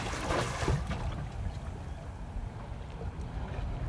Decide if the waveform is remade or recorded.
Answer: recorded